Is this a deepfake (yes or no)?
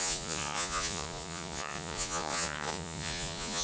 yes